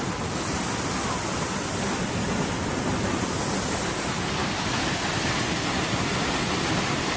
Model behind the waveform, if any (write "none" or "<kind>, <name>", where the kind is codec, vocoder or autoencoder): none